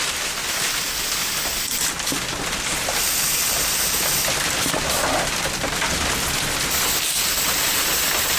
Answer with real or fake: real